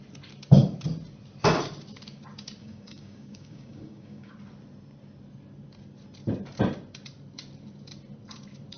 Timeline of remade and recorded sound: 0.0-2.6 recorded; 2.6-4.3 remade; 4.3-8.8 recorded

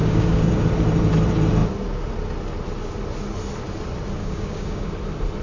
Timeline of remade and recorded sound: 0.0-0.5 remade; 0.5-4.2 recorded; 4.2-4.9 remade; 4.9-5.4 recorded

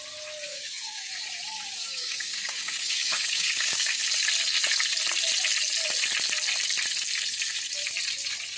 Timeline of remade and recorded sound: 0.0-0.5 recorded; 0.5-1.1 remade; 1.1-1.8 recorded; 1.8-4.0 remade; 4.0-8.6 recorded

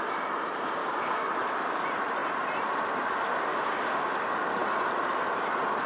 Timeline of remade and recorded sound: 0.0-0.8 recorded; 0.8-1.3 remade; 1.3-3.5 recorded; 3.5-4.1 remade; 4.1-5.9 recorded

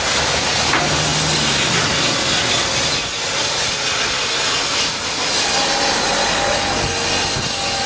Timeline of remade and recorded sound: 0.0-7.9 recorded